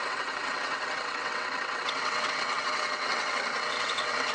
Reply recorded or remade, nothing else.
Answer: remade